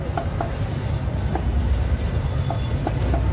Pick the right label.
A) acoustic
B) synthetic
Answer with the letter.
A